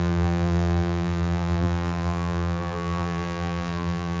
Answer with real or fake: fake